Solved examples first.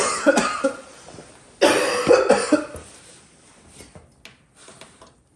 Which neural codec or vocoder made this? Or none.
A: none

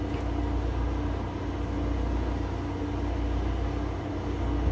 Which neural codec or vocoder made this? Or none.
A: none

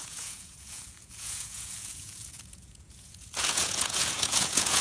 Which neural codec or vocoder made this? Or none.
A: vocoder, Vocos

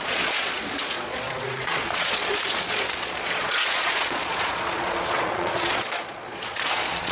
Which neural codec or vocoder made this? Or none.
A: vocoder, Vocos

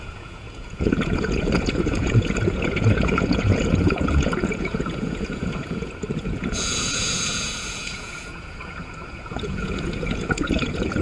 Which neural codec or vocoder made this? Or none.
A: vocoder, Vocos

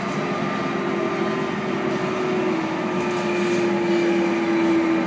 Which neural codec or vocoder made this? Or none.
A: none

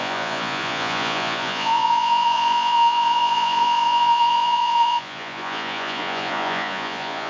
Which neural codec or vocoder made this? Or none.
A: vocoder, Vocos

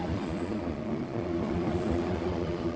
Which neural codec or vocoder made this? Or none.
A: vocoder, Vocos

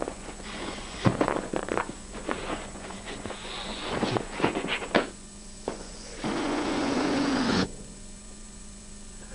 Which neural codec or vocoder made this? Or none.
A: vocoder, Vocos